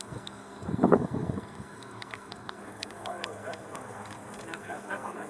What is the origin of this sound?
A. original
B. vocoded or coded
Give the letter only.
B